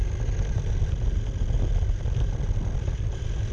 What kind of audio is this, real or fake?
real